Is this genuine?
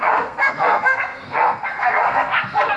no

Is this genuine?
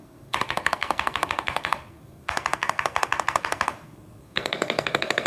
no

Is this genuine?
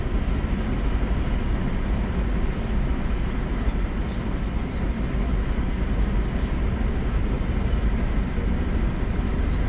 yes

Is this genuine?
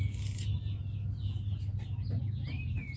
yes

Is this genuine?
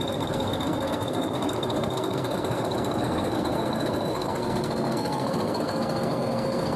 no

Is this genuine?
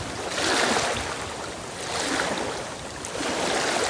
yes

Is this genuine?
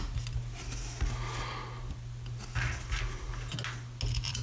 yes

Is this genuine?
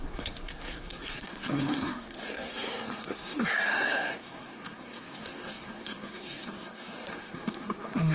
no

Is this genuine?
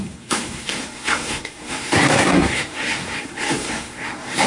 no